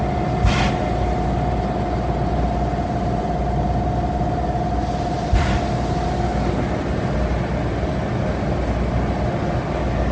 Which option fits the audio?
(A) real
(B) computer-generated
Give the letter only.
A